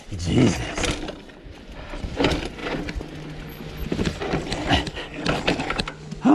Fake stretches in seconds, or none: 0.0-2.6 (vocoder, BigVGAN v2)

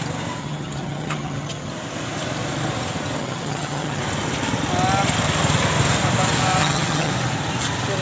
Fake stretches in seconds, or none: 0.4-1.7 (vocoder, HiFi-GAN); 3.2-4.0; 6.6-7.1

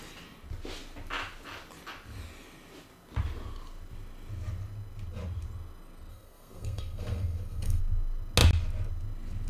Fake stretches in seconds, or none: 6.1-7.8 (codec, SNAC)